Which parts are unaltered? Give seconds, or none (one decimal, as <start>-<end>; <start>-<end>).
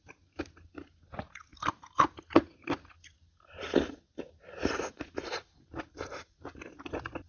0.0-7.3